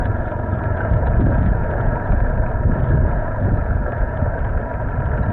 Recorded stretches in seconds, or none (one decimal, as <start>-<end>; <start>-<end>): 2.5-3.0; 4.2-5.3